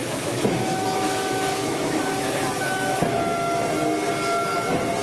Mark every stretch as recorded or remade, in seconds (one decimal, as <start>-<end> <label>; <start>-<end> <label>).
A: 0.0-3.0 remade; 3.0-5.0 recorded